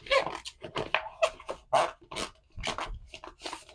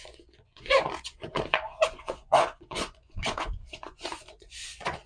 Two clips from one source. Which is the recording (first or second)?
first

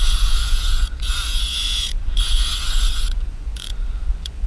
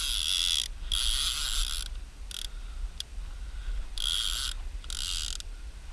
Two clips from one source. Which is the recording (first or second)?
second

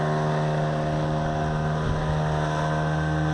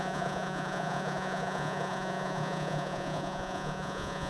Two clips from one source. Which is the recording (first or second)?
first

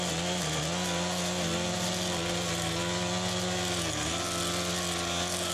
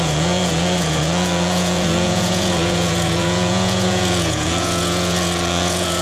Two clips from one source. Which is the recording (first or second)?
first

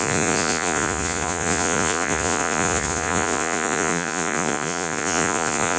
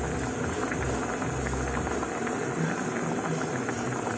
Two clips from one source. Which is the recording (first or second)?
second